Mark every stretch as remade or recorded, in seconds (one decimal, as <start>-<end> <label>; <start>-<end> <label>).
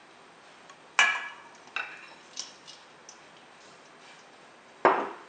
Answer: 0.0-5.3 recorded